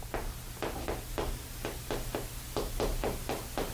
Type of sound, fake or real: real